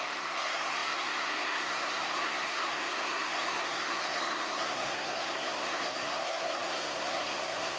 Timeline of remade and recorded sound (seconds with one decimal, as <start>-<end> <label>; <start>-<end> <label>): 0.0-7.8 remade